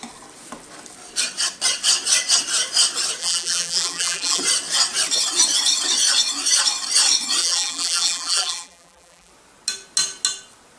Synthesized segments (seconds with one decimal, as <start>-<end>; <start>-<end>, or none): 3.2-4.4; 7.4-9.3